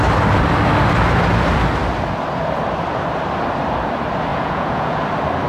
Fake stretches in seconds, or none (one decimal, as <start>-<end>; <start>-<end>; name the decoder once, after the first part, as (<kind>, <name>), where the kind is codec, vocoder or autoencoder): 4.3-5.0 (vocoder, Vocos)